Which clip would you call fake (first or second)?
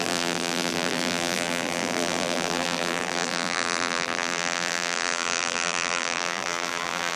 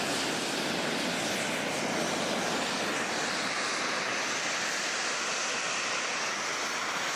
first